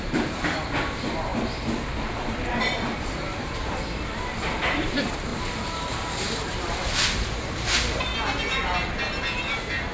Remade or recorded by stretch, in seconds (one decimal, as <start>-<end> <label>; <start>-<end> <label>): 0.0-8.1 remade; 8.1-9.5 recorded; 9.5-9.9 remade